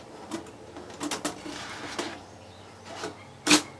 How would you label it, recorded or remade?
recorded